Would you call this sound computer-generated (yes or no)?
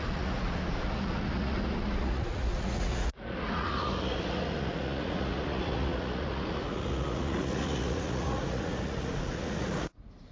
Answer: yes